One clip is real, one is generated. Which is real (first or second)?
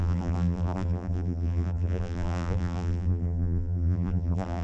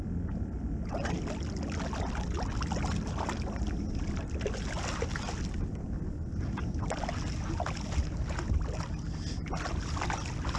second